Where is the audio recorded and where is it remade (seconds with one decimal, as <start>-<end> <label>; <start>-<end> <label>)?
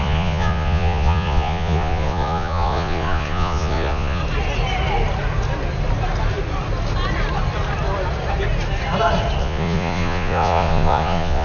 0.0-4.2 remade; 4.2-9.4 recorded; 9.4-11.4 remade